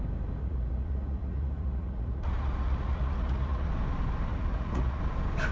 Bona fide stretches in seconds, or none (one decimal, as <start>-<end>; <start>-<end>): 0.0-0.4; 3.7-4.3; 5.0-5.5